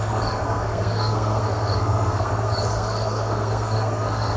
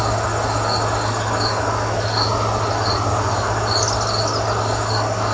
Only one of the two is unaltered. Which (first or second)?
second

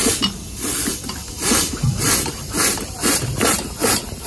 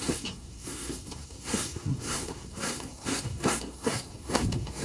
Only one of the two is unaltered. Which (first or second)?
first